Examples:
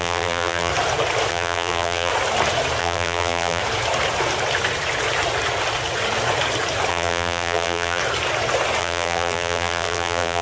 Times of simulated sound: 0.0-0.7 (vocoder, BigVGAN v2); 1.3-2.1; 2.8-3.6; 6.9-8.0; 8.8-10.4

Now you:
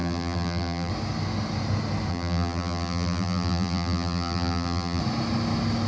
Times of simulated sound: 0.0-0.9 (vocoder, BigVGAN v2); 2.1-5.0

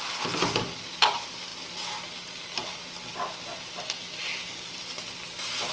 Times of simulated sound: 0.0-1.5 (vocoder, BigVGAN v2); 4.7-5.7

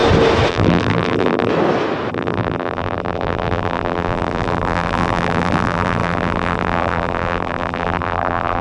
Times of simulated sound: 0.5-1.5 (vocoder, BigVGAN v2); 2.1-8.6

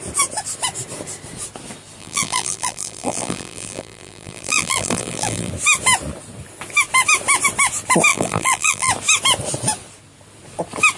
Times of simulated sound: 2.0-5.5 (vocoder, BigVGAN v2); 8.1-8.9

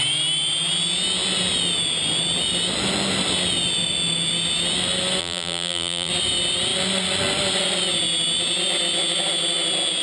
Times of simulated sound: 5.2-6.1 (vocoder, BigVGAN v2)

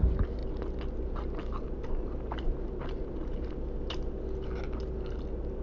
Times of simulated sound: none